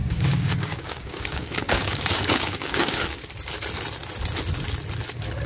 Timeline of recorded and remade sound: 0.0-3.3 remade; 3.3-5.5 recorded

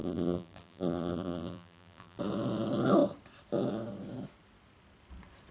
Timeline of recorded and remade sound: 0.0-2.2 remade; 2.2-5.5 recorded

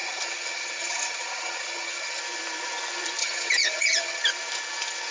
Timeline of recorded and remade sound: 0.0-2.2 remade; 2.2-3.2 recorded; 3.2-4.2 remade; 4.2-5.1 recorded

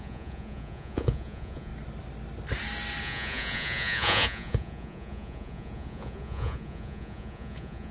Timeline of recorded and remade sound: 0.0-1.7 remade; 1.7-3.0 recorded; 3.0-7.9 remade

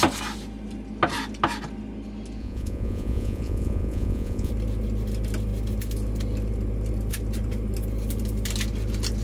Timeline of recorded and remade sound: 0.0-2.4 recorded; 2.4-4.5 remade; 4.5-9.2 recorded

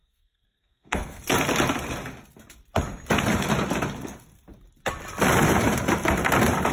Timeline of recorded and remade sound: 0.0-1.2 remade; 1.2-6.7 recorded